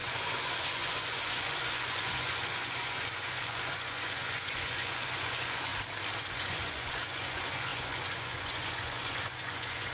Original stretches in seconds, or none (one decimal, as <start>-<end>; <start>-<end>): 5.7-6.2